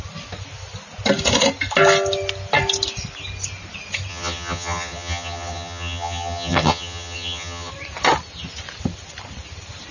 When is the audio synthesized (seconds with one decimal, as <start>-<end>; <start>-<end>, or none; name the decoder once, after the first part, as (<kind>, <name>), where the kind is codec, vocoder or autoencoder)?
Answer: 4.1-7.7 (vocoder, HiFi-GAN)